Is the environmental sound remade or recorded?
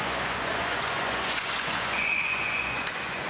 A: remade